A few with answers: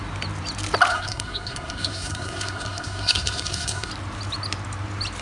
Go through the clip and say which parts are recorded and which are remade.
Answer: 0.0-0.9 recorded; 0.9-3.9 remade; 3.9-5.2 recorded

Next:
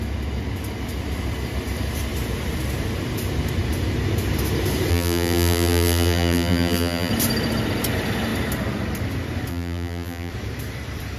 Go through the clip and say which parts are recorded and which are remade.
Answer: 0.0-4.9 recorded; 4.9-7.1 remade; 7.1-9.5 recorded; 9.5-10.3 remade; 10.3-11.2 recorded

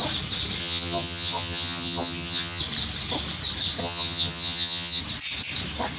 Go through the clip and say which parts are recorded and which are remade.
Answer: 0.0-0.6 recorded; 0.6-2.6 remade; 2.6-3.8 recorded; 3.8-5.0 remade; 5.0-6.0 recorded

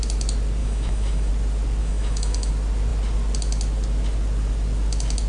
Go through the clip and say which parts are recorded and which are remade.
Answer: 0.0-0.6 recorded; 0.6-1.3 remade; 1.3-1.8 recorded; 1.8-2.5 remade; 2.5-5.3 recorded

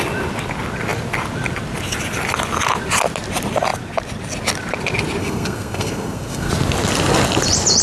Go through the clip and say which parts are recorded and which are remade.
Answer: 0.0-5.2 recorded; 5.2-6.5 remade; 6.5-7.8 recorded

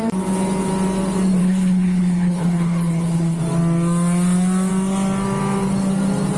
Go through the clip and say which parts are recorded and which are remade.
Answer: 0.0-1.4 recorded; 1.4-3.4 remade; 3.4-6.4 recorded

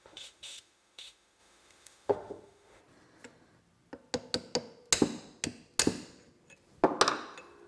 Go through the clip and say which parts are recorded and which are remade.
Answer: 0.0-2.8 remade; 2.8-7.7 recorded